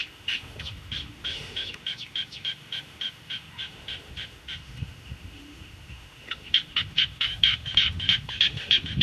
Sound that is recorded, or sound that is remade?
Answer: remade